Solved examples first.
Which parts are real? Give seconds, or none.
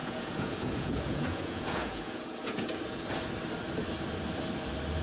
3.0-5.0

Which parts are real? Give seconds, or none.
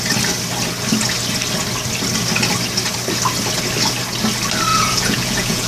0.0-4.7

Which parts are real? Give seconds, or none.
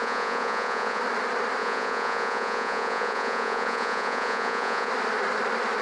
1.0-1.6; 4.9-5.8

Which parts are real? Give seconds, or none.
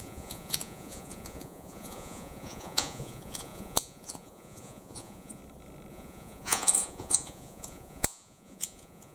5.4-5.9